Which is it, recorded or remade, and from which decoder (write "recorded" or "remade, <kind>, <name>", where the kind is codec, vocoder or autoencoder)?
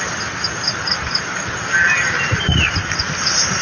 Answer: remade, vocoder, BigVGAN v2